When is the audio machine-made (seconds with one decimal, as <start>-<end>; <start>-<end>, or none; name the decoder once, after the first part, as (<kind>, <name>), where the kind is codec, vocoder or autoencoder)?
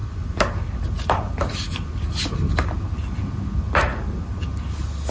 none